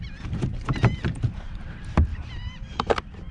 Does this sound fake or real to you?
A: fake